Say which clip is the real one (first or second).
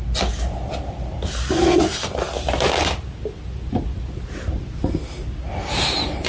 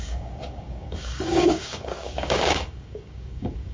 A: first